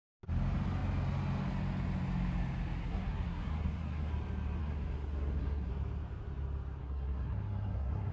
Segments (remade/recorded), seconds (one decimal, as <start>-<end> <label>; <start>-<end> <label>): 0.0-2.8 recorded; 2.8-4.1 remade; 4.1-4.6 recorded; 4.6-5.7 remade; 5.7-6.8 recorded; 6.8-8.1 remade